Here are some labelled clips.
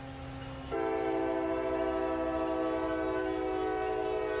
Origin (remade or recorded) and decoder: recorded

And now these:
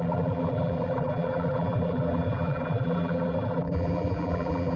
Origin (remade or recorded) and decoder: remade, vocoder, BigVGAN v2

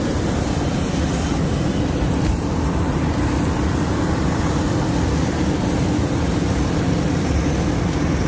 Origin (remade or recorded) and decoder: remade, vocoder, BigVGAN v2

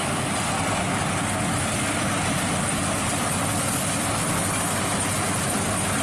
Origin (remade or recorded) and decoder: recorded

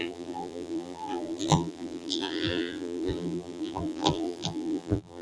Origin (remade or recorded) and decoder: remade, vocoder, BigVGAN v2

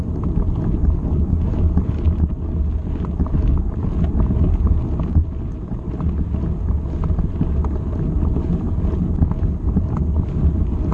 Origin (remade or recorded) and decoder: recorded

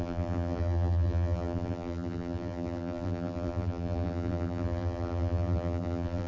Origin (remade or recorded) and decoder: remade, vocoder, BigVGAN v2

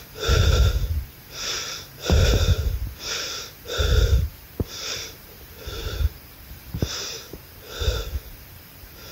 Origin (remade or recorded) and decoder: remade, vocoder, BigVGAN v2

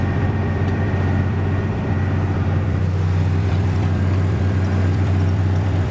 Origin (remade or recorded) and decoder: remade, vocoder, BigVGAN v2